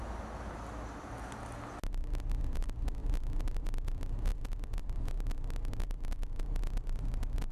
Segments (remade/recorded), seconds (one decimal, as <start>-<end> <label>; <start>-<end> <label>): 0.0-7.5 recorded